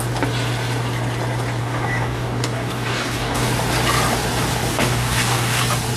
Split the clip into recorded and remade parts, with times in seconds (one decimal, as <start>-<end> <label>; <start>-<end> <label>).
0.0-1.6 recorded; 1.6-3.5 remade; 3.5-4.7 recorded; 4.7-5.6 remade; 5.6-6.0 recorded